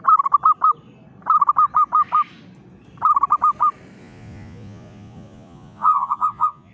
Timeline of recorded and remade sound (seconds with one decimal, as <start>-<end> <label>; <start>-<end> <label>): 0.0-4.0 recorded; 4.0-6.7 remade